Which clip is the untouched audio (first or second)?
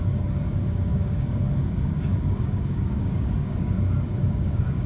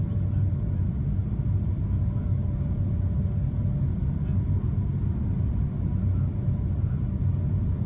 second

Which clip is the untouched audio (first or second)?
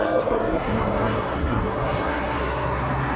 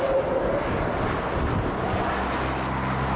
second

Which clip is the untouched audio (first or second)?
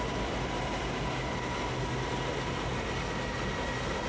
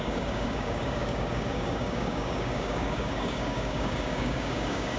first